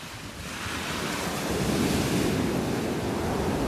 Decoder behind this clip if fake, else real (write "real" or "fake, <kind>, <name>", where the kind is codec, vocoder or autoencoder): real